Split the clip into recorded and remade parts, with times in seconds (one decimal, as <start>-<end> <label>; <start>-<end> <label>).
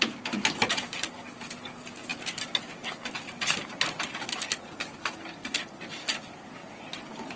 0.0-7.4 recorded